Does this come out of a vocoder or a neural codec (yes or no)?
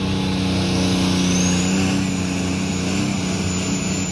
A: no